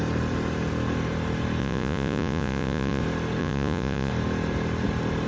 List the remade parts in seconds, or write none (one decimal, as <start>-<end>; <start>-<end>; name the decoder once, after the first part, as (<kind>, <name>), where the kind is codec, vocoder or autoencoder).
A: 1.6-3.0 (vocoder, Vocos); 3.4-4.1